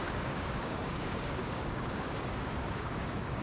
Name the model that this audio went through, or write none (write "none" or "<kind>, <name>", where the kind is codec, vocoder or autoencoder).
codec, DAC